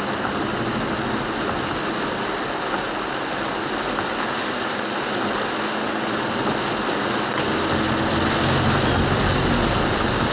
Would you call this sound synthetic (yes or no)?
no